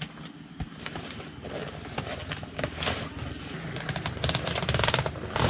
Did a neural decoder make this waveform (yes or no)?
no